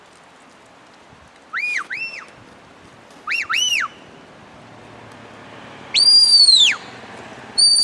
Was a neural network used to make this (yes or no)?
no